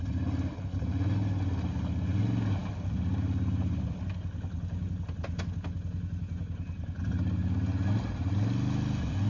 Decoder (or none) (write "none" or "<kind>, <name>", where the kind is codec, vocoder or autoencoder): none